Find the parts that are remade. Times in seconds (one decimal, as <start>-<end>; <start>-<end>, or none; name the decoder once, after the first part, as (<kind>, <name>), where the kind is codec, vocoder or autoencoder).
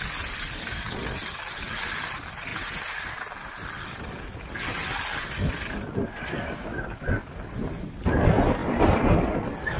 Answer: 2.5-3.3 (vocoder, BigVGAN v2); 8.6-9.4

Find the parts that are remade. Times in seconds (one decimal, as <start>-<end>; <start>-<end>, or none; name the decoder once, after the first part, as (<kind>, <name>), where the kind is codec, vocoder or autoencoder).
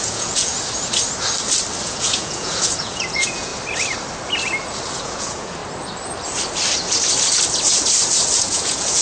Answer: 0.0-0.5 (vocoder, Vocos); 1.8-3.5; 5.0-5.6; 8.4-9.0